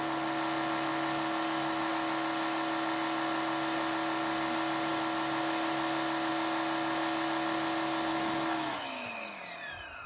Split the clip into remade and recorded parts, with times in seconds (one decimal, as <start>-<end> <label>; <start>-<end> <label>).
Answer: 0.0-0.9 recorded; 0.9-1.9 remade; 1.9-8.1 recorded; 8.1-9.4 remade; 9.4-10.1 recorded